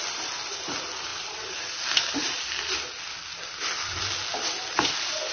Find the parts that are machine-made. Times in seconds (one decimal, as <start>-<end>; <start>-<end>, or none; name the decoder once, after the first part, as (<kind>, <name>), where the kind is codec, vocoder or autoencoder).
none